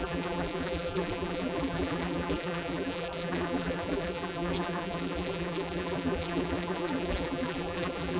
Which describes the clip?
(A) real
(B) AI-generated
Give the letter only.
B